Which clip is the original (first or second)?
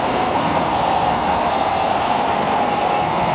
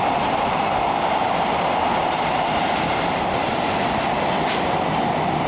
second